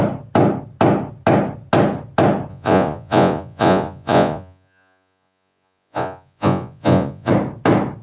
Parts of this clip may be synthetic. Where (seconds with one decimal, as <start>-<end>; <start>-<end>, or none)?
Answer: 2.5-7.3